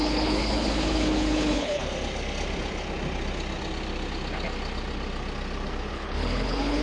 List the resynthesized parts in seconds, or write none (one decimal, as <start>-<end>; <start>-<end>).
0.0-1.8; 5.9-6.8